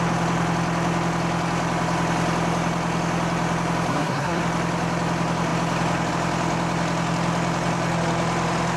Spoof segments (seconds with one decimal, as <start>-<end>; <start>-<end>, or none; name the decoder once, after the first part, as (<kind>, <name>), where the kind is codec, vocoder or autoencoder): 3.9-4.4 (codec, SNAC)